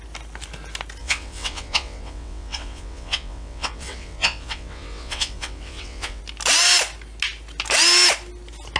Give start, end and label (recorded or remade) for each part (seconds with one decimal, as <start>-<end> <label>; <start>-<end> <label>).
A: 0.0-1.0 recorded; 1.0-6.2 remade; 6.2-8.8 recorded